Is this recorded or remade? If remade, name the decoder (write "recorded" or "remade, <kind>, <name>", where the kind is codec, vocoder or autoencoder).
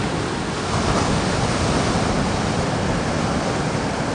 recorded